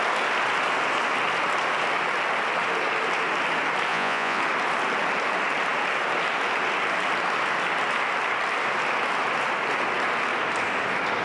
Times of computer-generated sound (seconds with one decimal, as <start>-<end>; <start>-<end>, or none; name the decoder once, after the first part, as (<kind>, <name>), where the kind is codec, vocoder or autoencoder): 3.9-4.4 (vocoder, Vocos)